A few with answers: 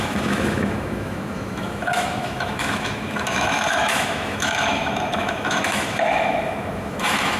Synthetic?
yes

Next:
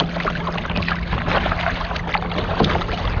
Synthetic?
no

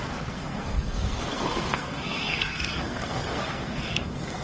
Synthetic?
yes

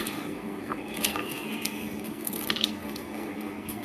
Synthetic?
yes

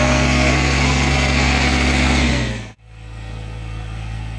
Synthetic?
yes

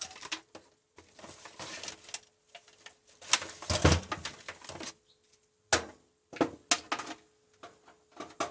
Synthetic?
no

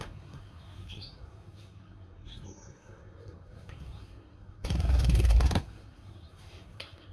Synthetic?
yes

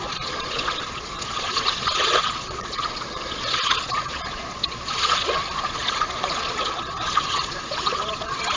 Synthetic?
yes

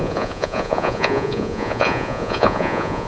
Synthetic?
yes